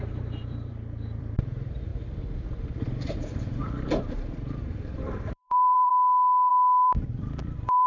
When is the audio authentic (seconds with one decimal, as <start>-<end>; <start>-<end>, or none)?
1.9-2.4; 5.9-6.5